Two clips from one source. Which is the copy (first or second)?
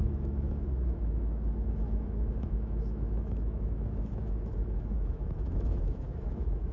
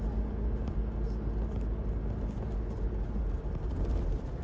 first